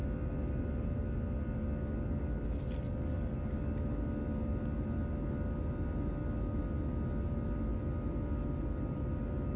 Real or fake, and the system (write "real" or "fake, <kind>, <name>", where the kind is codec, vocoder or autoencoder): real